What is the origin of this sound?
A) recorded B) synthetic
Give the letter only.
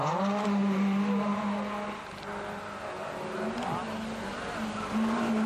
A